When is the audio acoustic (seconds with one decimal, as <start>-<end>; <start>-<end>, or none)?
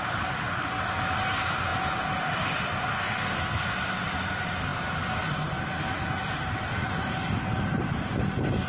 0.0-2.9; 3.6-8.7